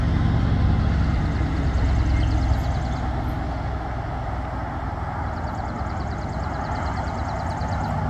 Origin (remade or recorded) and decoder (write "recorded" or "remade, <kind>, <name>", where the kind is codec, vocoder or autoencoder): recorded